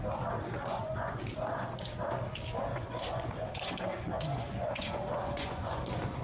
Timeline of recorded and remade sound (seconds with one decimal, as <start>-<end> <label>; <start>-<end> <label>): 0.0-0.7 recorded; 0.7-1.2 remade; 1.2-2.7 recorded; 2.7-5.8 remade; 5.8-6.2 recorded